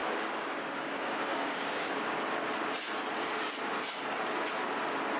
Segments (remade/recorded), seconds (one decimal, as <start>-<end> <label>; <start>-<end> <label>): 0.0-2.2 remade; 2.2-5.2 recorded

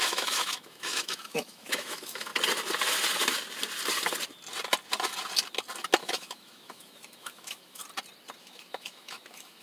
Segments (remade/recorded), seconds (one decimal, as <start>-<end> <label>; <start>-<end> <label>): 0.0-2.3 remade; 2.3-6.0 recorded; 6.0-7.8 remade; 7.8-8.4 recorded; 8.4-9.6 remade